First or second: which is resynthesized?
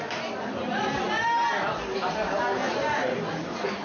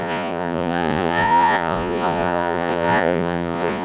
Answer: second